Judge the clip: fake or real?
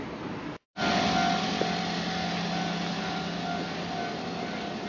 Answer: real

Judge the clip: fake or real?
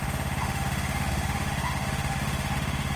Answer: fake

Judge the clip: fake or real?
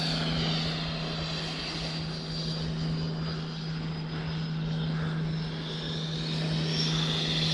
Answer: real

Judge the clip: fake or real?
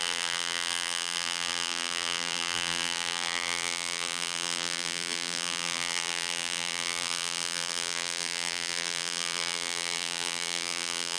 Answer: fake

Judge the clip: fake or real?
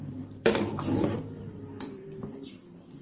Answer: fake